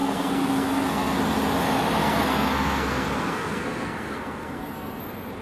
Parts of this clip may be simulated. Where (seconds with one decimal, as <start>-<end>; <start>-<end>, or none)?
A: 0.0-1.2; 2.0-5.0